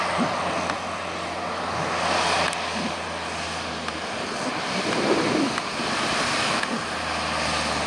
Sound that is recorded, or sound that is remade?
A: recorded